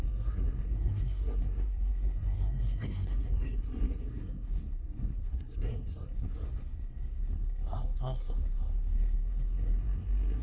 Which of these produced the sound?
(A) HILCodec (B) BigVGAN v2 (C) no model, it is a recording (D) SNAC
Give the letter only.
D